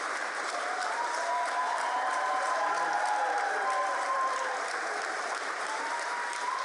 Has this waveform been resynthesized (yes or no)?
yes